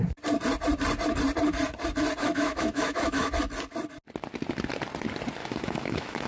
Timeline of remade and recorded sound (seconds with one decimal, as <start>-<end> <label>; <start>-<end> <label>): 0.0-2.2 recorded; 2.2-3.3 remade; 3.3-5.4 recorded; 5.4-6.3 remade